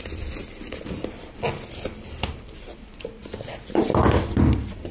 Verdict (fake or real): fake